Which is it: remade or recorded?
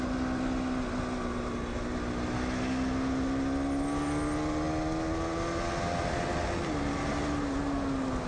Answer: recorded